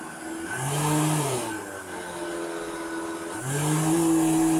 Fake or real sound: real